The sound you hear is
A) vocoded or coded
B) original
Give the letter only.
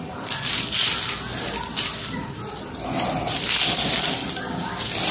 B